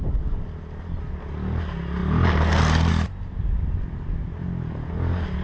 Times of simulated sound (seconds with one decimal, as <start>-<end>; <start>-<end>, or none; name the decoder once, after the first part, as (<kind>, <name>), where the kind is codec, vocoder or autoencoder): none